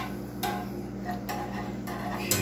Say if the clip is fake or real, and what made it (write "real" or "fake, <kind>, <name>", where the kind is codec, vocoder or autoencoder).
real